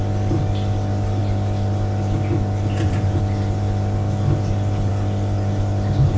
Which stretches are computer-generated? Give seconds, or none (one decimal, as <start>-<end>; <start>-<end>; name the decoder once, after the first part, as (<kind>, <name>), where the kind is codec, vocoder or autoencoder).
none

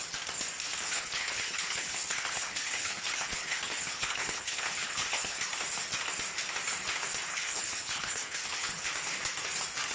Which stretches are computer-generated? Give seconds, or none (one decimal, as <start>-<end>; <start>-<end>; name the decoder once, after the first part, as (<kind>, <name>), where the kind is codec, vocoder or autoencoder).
0.6-5.4 (codec, HILCodec); 7.3-8.9

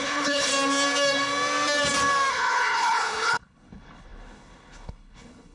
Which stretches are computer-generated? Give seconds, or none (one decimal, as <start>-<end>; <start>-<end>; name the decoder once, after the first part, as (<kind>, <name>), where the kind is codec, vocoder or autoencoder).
0.0-0.5 (codec, HILCodec); 2.3-5.5

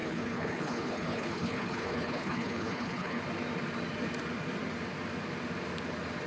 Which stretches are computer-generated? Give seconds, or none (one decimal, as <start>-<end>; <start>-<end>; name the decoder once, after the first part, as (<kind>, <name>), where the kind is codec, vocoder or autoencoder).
0.0-3.2 (codec, HILCodec)

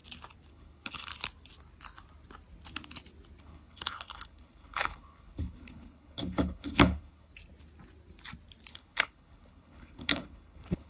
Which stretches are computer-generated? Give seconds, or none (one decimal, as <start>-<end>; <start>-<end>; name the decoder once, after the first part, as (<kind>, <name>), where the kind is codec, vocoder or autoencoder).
0.5-1.1 (codec, HILCodec); 3.4-7.3; 8.7-10.9

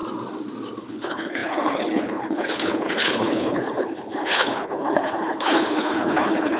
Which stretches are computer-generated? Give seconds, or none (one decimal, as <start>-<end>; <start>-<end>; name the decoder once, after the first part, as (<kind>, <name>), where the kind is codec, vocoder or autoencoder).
0.8-6.6 (codec, HILCodec)

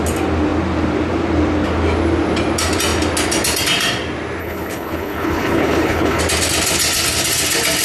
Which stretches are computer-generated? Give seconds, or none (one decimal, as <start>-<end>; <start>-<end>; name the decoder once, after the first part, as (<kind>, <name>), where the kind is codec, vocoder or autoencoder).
4.4-6.2 (codec, HILCodec)

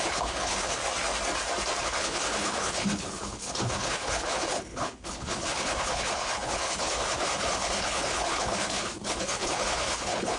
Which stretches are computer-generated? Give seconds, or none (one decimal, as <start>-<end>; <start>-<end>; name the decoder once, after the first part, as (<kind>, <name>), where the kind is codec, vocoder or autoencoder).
0.0-0.8 (codec, HILCodec); 1.8-10.4